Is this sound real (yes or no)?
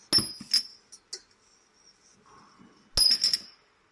yes